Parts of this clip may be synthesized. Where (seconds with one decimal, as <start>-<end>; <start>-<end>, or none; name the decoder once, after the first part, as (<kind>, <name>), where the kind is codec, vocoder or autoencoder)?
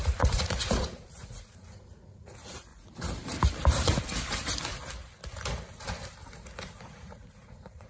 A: 0.0-2.7 (vocoder, Vocos); 6.8-7.9